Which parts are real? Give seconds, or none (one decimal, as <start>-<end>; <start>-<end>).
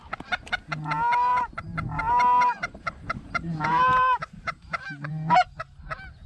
0.0-1.3; 5.1-6.3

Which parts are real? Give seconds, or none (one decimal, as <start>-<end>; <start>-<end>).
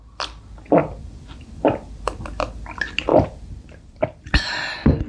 0.0-0.8; 2.1-3.1; 3.7-5.1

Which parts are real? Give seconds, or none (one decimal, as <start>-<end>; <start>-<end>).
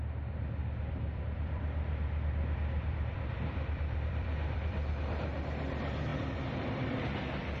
0.0-0.6; 4.9-6.1; 7.0-7.6